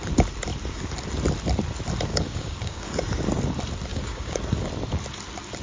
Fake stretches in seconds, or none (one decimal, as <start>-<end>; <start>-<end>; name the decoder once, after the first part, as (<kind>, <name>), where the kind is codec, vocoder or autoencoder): 2.1-3.0 (codec, DAC); 3.9-4.4